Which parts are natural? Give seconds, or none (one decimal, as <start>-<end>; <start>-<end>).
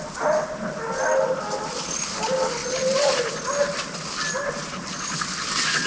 0.0-5.9